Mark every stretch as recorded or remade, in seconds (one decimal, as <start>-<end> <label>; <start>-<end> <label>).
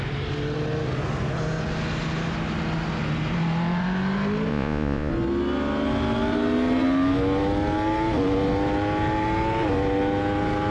0.0-4.5 recorded; 4.5-5.1 remade; 5.1-10.7 recorded